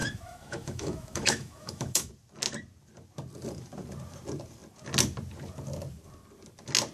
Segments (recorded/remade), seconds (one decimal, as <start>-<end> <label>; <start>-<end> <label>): 0.0-2.1 remade; 2.1-6.9 recorded